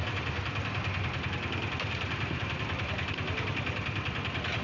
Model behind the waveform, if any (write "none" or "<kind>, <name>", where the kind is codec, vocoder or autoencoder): none